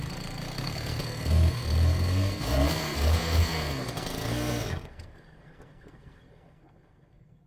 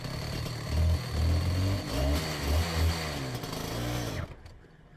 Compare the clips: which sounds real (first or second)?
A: second